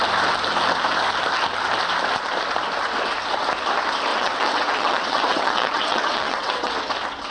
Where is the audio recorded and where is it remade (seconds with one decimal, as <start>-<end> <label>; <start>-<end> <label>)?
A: 0.0-4.1 recorded; 4.1-6.7 remade; 6.7-7.3 recorded